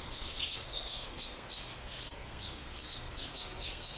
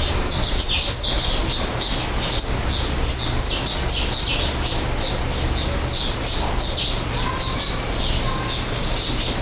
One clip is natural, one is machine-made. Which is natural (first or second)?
second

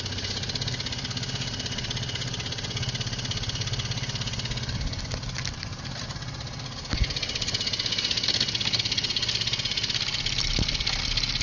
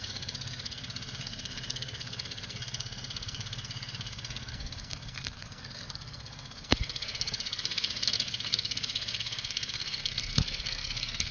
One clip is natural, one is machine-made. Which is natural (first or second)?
first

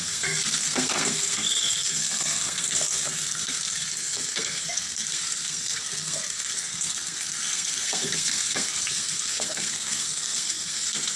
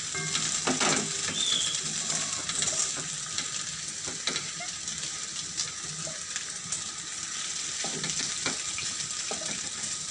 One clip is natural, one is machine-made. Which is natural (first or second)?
second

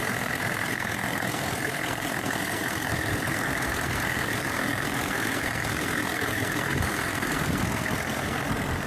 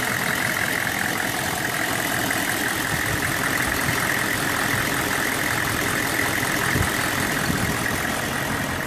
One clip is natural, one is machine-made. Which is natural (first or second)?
second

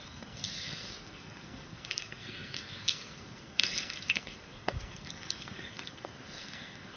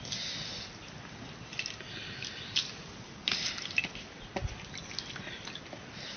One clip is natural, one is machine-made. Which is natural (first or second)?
second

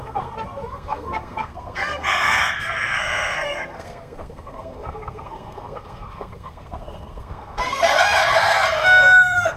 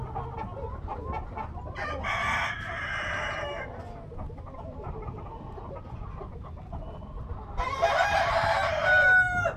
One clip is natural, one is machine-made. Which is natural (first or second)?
second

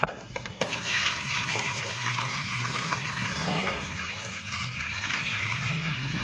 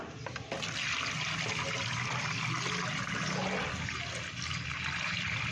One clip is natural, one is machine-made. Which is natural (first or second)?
second